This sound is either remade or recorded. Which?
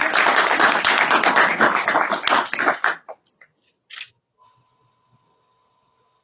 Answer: recorded